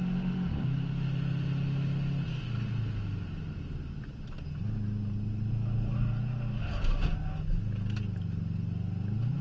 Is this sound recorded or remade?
recorded